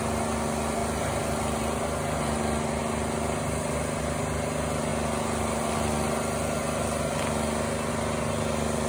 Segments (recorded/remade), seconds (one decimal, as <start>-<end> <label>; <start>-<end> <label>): 0.0-8.9 recorded

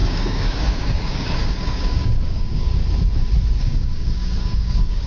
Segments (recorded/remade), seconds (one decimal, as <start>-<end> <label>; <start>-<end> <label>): 0.0-2.8 remade; 2.8-3.6 recorded; 3.6-5.1 remade